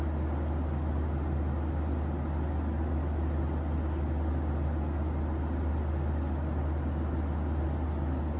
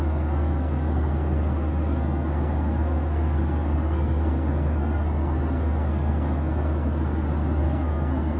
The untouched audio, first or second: first